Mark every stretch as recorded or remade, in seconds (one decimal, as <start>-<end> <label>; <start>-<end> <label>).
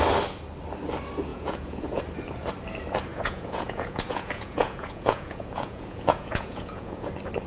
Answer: 0.0-1.3 recorded; 1.3-2.0 remade; 2.0-3.1 recorded; 3.1-7.1 remade; 7.1-7.5 recorded